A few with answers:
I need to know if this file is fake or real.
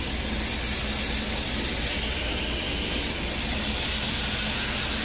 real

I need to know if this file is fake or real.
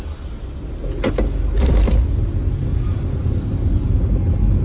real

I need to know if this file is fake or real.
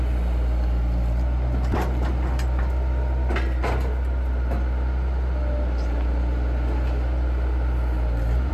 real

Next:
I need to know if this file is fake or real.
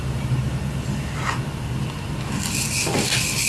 real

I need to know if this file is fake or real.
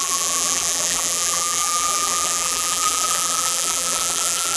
fake